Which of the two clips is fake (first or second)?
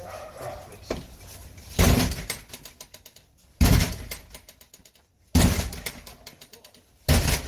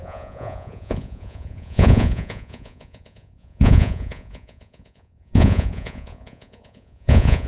second